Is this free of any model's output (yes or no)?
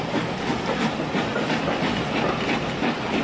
yes